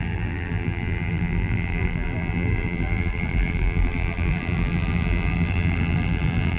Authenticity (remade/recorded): remade